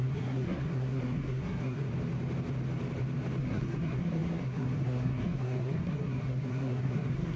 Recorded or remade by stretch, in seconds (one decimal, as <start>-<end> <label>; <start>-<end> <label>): 0.0-1.9 remade; 1.9-3.4 recorded; 3.4-7.4 remade